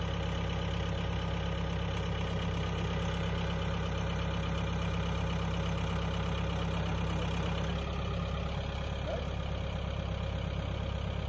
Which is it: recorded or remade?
recorded